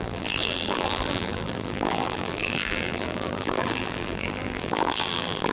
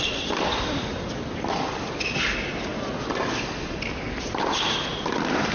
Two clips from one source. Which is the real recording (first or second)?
second